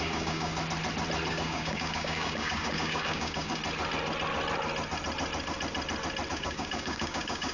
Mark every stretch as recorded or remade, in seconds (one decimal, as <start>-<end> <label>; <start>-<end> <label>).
0.0-0.5 remade; 0.5-1.3 recorded; 1.3-3.6 remade; 3.6-6.3 recorded; 6.3-7.5 remade